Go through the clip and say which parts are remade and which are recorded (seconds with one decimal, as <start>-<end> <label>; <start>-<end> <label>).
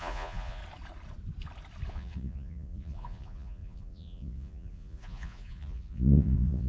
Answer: 0.0-0.6 remade; 0.6-1.9 recorded; 1.9-6.7 remade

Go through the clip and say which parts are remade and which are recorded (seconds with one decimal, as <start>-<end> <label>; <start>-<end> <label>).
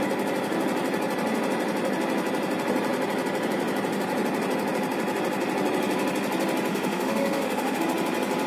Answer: 0.0-6.7 recorded; 6.7-7.8 remade; 7.8-8.5 recorded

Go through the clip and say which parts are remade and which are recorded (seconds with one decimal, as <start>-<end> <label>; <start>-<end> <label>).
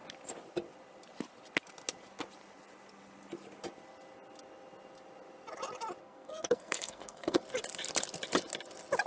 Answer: 0.0-6.0 recorded; 6.0-7.4 remade; 7.4-9.1 recorded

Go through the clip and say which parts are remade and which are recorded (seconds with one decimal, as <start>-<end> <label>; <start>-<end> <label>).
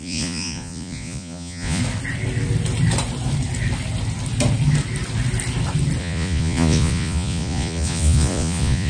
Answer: 0.0-1.8 remade; 1.8-6.0 recorded; 6.0-8.9 remade